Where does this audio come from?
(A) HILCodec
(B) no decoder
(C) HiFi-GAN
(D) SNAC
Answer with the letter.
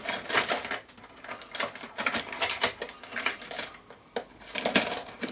B